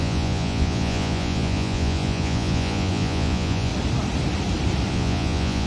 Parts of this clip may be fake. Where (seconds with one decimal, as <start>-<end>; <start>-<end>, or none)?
0.0-3.7; 4.9-5.7